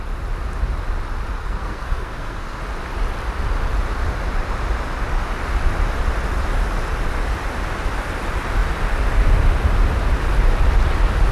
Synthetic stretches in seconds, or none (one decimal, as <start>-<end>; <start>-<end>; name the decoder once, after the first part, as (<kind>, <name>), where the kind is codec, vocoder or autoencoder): 1.4-2.6 (codec, SNAC)

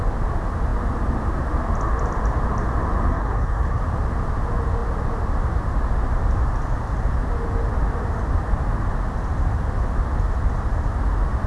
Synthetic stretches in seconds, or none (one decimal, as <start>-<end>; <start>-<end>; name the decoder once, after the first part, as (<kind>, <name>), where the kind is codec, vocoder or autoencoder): 3.1-3.8 (codec, SNAC)

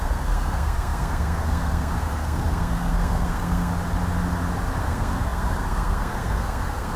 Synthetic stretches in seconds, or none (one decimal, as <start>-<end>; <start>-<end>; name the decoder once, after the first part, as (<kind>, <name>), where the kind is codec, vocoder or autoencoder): 0.0-3.7 (codec, SNAC); 4.8-7.0